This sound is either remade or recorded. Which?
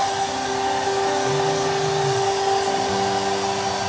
recorded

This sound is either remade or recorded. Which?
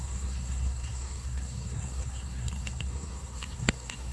remade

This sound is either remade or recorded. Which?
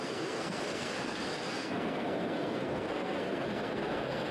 remade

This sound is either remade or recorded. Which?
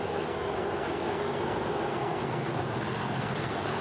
remade